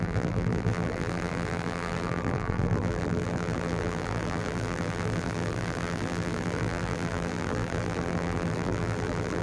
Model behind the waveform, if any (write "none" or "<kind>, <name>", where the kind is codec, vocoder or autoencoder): vocoder, BigVGAN v2